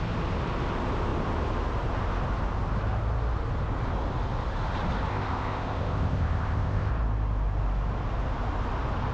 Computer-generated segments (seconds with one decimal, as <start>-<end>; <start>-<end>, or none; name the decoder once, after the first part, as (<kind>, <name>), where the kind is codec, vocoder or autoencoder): 5.1-6.9 (codec, ZipCodec)